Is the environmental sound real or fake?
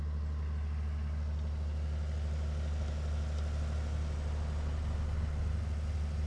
real